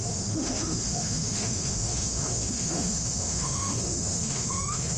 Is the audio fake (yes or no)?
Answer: yes